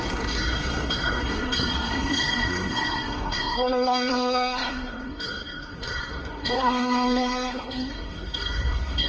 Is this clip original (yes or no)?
no